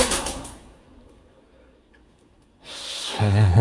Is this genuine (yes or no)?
no